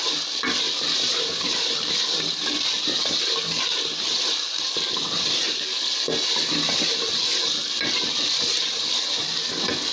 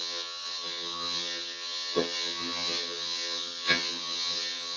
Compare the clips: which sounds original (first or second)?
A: first